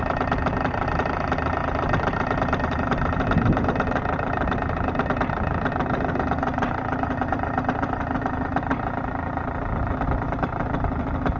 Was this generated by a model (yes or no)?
no